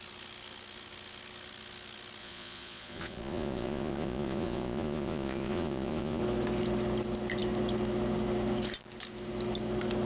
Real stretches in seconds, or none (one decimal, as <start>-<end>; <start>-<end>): 0.0-2.2; 6.2-10.1